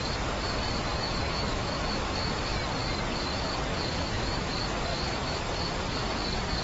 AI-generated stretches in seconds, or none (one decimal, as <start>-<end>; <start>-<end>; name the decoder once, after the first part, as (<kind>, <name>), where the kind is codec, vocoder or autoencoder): 0.9-1.8 (autoencoder, DAC-VAE); 3.7-4.5; 4.9-5.5